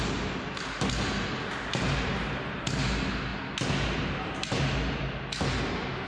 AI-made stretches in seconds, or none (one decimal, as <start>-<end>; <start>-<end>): 1.7-2.6